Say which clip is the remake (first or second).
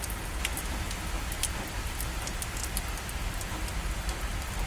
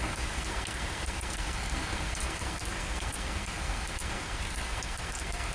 second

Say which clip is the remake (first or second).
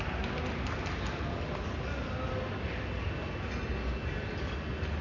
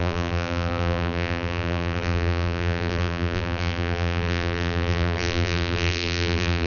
second